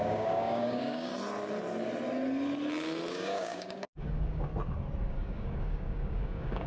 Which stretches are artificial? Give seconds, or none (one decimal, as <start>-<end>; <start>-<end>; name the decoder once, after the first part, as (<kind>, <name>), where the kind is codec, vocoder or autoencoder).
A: 0.0-1.1 (codec, DAC); 3.1-4.5; 5.1-6.7